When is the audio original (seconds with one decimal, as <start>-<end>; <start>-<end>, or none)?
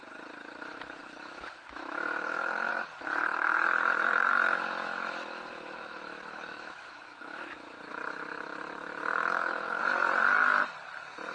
0.0-1.0; 2.7-3.3; 7.9-9.0; 9.8-11.3